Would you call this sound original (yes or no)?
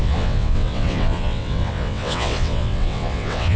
no